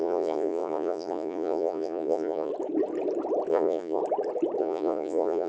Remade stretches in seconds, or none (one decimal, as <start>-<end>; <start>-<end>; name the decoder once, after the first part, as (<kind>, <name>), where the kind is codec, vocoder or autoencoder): 0.0-2.5 (vocoder, Vocos); 3.5-4.0; 4.6-5.5